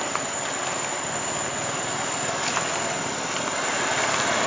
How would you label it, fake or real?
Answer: real